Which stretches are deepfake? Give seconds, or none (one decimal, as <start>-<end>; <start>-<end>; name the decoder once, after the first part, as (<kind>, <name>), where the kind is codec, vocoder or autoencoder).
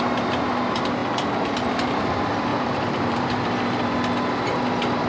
1.0-2.0 (vocoder, BigVGAN v2); 2.5-3.3